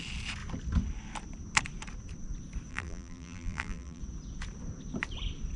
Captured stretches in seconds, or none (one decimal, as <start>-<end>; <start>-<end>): 0.0-2.7; 4.0-5.6